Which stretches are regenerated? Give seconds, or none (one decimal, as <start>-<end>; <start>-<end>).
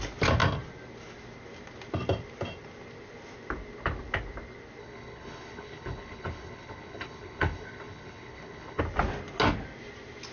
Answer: 4.8-8.8